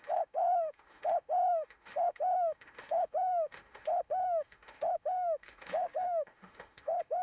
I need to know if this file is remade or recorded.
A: remade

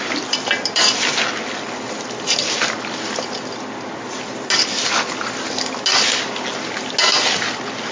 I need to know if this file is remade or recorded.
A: recorded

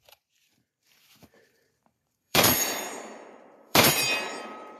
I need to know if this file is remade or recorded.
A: remade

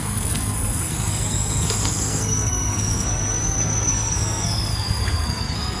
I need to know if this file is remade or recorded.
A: remade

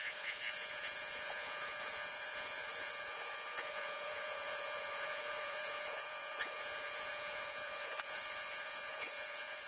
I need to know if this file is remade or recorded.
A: remade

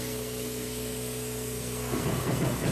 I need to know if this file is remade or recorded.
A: remade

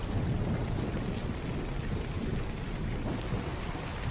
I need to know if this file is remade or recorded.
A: recorded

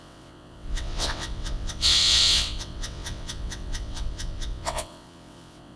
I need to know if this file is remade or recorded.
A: remade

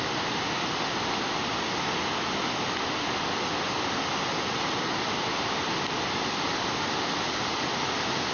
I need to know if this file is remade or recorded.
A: recorded